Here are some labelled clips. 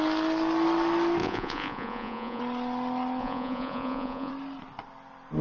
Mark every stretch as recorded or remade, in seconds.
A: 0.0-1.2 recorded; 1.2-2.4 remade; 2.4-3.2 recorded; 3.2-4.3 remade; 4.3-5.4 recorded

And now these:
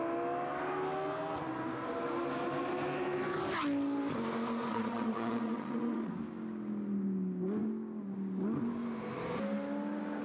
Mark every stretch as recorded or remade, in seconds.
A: 0.0-4.7 recorded; 4.7-6.1 remade; 6.1-10.2 recorded

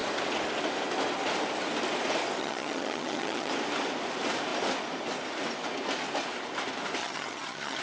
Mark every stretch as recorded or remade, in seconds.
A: 0.0-2.4 recorded; 2.4-3.5 remade; 3.5-7.0 recorded; 7.0-7.8 remade

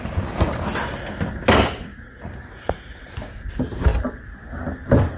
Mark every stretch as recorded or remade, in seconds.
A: 0.0-1.9 remade; 1.9-3.5 recorded; 3.5-5.2 remade

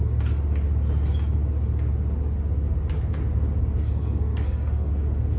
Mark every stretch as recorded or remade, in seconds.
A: 0.0-3.8 recorded; 3.8-4.9 remade; 4.9-5.4 recorded

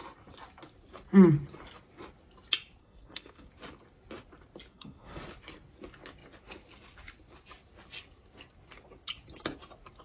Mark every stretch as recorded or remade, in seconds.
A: 0.0-2.8 recorded; 2.8-3.5 remade; 3.5-4.7 recorded; 4.7-5.2 remade; 5.2-10.0 recorded